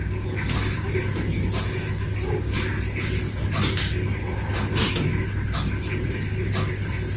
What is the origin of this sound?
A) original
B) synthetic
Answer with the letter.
A